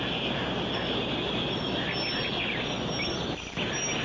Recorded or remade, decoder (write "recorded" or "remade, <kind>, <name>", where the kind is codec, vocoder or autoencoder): recorded